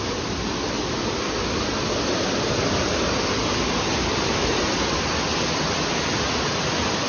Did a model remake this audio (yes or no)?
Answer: no